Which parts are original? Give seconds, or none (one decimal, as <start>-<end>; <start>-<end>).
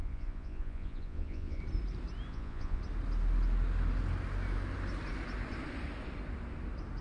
1.6-2.3; 2.8-7.0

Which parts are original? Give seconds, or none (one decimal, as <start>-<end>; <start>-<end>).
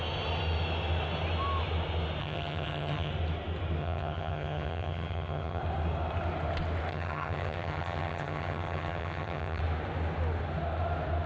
0.0-2.2; 3.1-3.8; 5.6-6.9; 9.6-11.3